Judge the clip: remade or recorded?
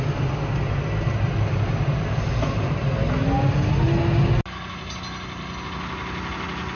recorded